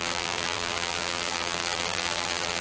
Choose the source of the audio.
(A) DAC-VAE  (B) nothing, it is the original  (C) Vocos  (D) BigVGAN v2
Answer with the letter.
D